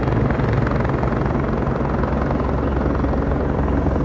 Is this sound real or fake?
real